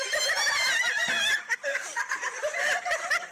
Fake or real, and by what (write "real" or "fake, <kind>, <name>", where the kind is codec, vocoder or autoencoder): fake, vocoder, BigVGAN v2